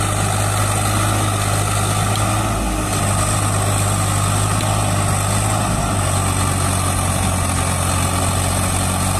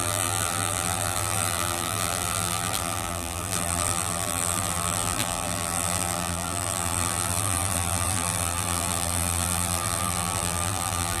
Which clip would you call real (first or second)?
first